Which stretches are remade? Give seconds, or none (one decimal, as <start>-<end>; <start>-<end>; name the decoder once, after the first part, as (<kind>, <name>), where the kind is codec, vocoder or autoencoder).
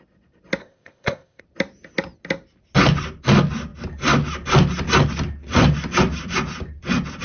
0.6-1.4 (codec, ZipCodec)